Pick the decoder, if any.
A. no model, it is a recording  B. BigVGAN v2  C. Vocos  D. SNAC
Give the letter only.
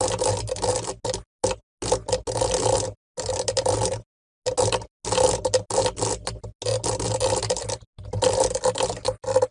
A